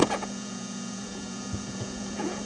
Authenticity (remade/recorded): remade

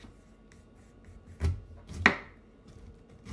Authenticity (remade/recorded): recorded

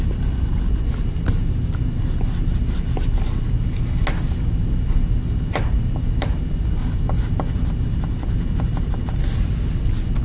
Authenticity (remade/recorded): recorded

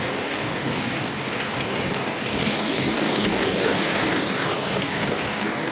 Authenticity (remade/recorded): remade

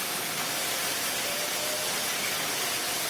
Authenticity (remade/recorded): recorded